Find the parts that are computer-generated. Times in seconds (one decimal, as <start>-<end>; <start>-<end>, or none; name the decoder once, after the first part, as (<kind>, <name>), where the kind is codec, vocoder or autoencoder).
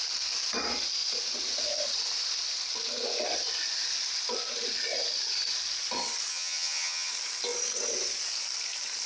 6.3-7.1 (vocoder, HiFi-GAN)